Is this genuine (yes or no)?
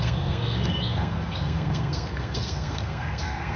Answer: no